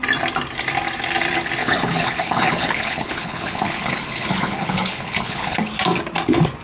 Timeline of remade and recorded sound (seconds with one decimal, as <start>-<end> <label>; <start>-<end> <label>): 0.0-1.6 recorded; 1.6-5.6 remade; 5.6-6.6 recorded